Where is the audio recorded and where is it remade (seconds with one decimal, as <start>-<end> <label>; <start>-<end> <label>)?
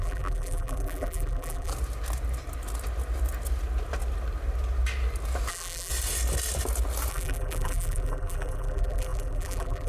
0.0-1.7 remade; 1.7-5.5 recorded; 5.5-5.9 remade; 5.9-7.1 recorded; 7.1-9.9 remade